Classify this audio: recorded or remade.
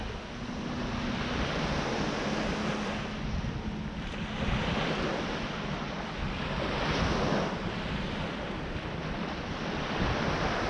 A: recorded